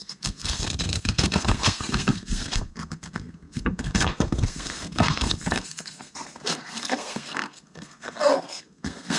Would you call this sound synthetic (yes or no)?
yes